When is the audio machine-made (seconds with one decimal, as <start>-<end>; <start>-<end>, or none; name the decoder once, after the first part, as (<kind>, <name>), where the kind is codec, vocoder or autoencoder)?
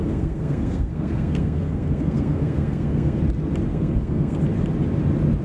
0.0-3.2 (codec, SNAC); 3.7-4.4